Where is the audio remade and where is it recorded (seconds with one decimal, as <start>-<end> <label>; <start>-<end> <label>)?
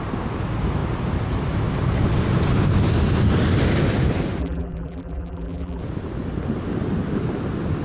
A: 0.0-4.4 recorded; 4.4-5.8 remade; 5.8-7.8 recorded